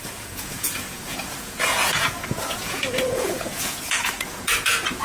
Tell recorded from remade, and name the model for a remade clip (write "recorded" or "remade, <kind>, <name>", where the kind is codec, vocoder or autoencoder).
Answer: remade, vocoder, Vocos